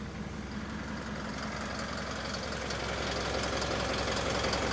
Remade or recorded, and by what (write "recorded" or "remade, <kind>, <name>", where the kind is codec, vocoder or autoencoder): recorded